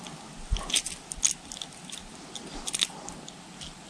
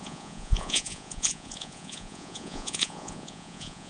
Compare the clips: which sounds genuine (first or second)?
first